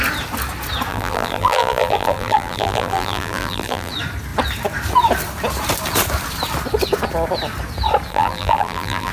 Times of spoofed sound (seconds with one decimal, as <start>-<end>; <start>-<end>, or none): 0.9-3.9; 8.1-9.1